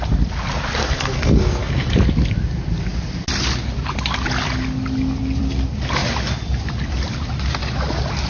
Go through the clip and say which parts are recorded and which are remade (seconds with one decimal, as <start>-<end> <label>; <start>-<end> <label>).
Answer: 0.0-0.8 recorded; 0.8-1.9 remade; 1.9-8.3 recorded